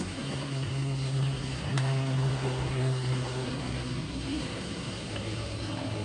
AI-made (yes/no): yes